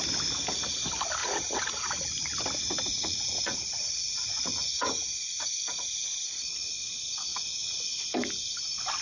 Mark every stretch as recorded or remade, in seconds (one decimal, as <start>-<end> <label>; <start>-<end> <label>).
0.0-1.2 recorded; 1.2-1.9 remade; 1.9-2.9 recorded; 2.9-5.9 remade; 5.9-7.3 recorded; 7.3-7.8 remade; 7.8-9.0 recorded